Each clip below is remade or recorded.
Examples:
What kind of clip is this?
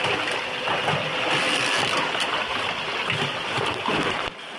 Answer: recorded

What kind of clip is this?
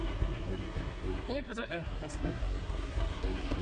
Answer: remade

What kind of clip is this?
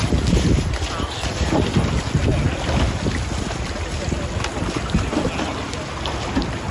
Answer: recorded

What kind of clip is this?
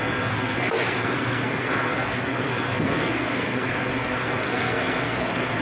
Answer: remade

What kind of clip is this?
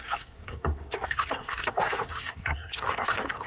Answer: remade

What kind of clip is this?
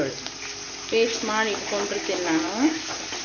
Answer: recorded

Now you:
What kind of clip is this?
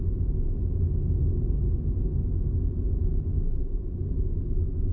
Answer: recorded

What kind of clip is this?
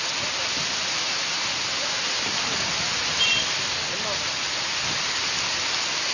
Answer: recorded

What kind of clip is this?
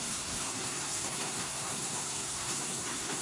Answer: remade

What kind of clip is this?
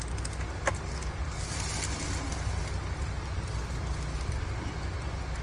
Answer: recorded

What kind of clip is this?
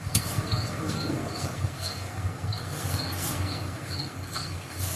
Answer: remade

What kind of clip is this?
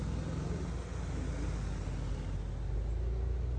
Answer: recorded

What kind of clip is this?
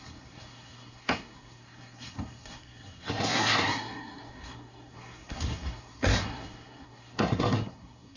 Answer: remade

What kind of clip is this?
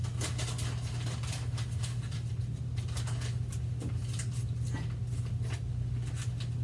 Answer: recorded